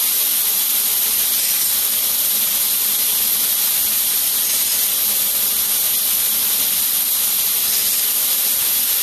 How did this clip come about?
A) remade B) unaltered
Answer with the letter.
B